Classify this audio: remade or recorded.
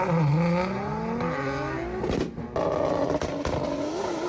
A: recorded